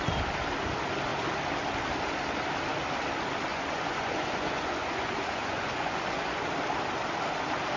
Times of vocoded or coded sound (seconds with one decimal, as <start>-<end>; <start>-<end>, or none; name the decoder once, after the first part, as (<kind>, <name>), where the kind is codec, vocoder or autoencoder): 3.5-6.5 (vocoder, Vocos)